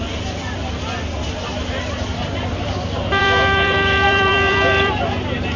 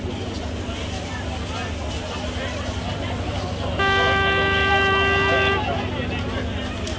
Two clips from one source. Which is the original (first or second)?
second